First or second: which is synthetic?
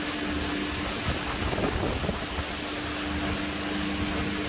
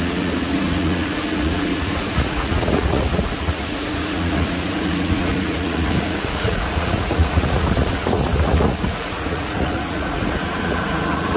second